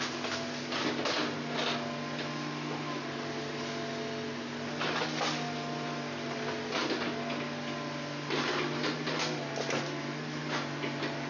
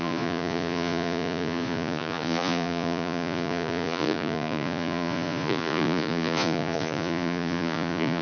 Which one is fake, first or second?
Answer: second